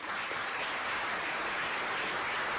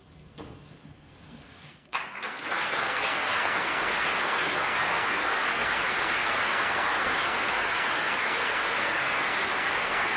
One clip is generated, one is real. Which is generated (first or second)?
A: second